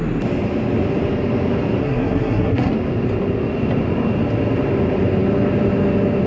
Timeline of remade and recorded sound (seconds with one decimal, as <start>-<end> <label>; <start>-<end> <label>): 0.0-1.8 recorded; 1.8-2.7 remade; 2.7-6.3 recorded

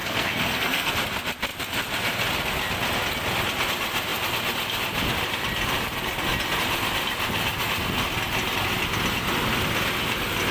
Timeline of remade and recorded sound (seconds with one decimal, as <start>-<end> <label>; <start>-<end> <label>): 0.0-0.9 remade; 0.9-10.5 recorded

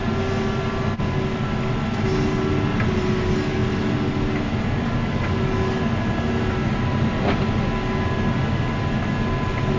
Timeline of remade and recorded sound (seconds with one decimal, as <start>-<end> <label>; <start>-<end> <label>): 0.0-9.8 recorded